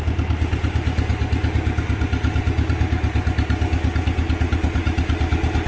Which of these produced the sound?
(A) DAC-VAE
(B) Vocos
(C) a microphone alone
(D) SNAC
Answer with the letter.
C